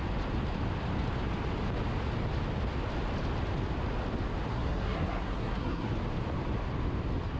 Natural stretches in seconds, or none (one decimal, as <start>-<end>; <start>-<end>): 0.0-4.5; 5.9-7.4